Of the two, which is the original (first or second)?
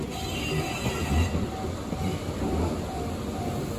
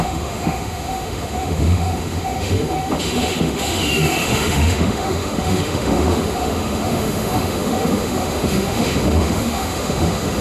first